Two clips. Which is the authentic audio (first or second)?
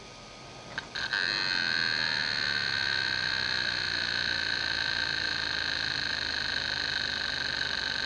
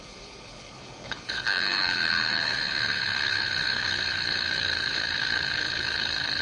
first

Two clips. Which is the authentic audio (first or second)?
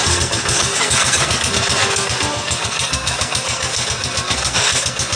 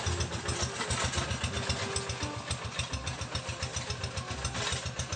second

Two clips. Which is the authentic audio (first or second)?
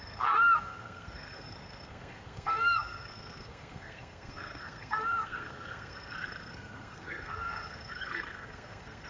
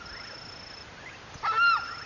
second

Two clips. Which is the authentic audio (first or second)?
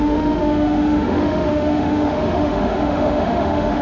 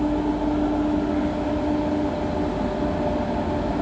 second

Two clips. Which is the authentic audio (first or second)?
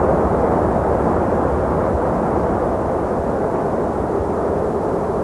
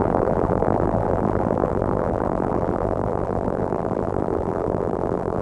first